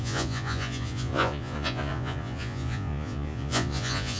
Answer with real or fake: fake